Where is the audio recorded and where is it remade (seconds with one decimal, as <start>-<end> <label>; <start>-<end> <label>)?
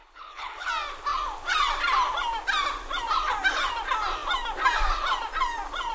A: 0.0-0.7 remade; 0.7-5.9 recorded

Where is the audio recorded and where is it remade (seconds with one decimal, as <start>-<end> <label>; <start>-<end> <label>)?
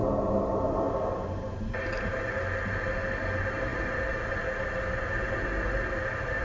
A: 0.0-6.4 recorded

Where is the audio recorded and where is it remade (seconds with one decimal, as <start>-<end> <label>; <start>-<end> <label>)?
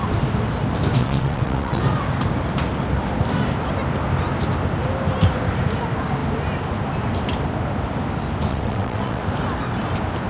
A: 0.0-1.0 recorded; 1.0-1.8 remade; 1.8-8.5 recorded; 8.5-9.2 remade; 9.2-10.3 recorded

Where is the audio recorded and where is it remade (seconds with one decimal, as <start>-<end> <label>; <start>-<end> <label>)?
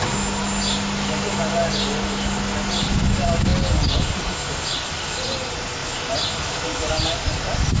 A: 0.0-7.8 recorded